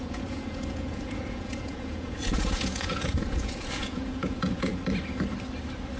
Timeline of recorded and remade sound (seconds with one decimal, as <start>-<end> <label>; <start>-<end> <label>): 0.0-4.7 remade; 4.7-6.0 recorded